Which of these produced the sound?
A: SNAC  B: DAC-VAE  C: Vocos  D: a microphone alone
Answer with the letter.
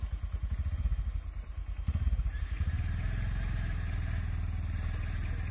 D